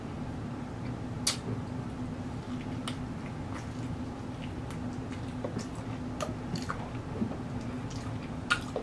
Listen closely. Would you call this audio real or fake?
real